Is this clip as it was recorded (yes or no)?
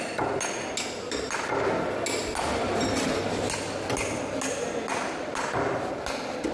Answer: yes